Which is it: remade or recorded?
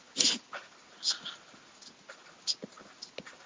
recorded